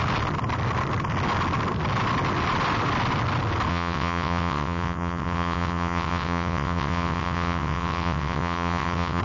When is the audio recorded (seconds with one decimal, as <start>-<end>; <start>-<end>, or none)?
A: 0.0-3.7